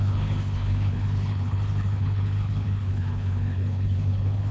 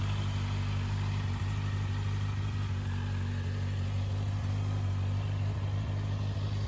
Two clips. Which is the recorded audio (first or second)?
second